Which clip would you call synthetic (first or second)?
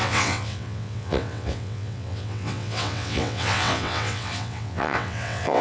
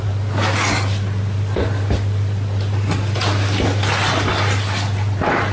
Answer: first